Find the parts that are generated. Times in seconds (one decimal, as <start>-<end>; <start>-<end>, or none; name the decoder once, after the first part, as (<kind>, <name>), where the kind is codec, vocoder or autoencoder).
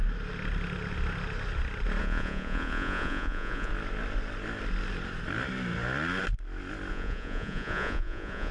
2.0-3.7 (vocoder, Vocos); 6.9-8.5